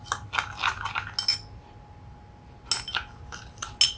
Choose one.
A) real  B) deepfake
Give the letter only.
A